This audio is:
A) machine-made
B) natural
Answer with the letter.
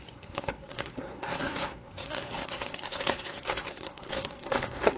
A